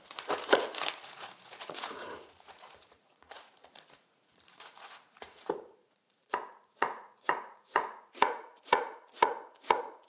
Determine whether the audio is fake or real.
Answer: fake